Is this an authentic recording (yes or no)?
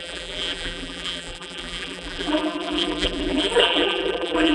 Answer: no